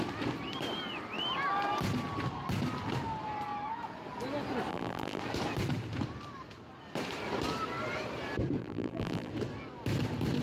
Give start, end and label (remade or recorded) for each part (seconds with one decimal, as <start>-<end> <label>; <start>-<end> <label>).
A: 0.0-4.7 recorded; 4.7-5.2 remade; 5.2-8.6 recorded; 8.6-9.3 remade; 9.3-10.4 recorded